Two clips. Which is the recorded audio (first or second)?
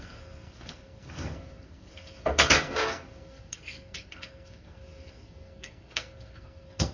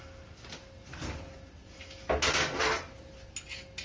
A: second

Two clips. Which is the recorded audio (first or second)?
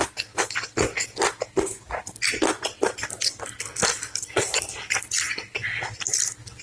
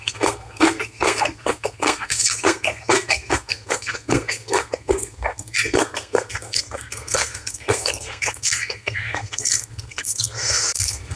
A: first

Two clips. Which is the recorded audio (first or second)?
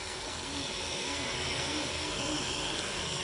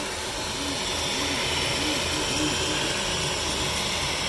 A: second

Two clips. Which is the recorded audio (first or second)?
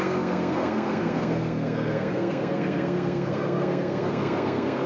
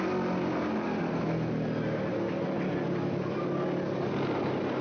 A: second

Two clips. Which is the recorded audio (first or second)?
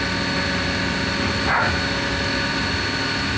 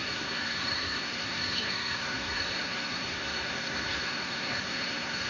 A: first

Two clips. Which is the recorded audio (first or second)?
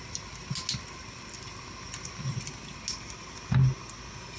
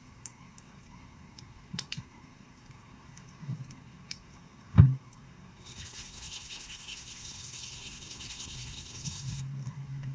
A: first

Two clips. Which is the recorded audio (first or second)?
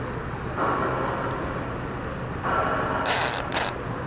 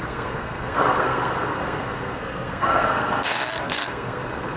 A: first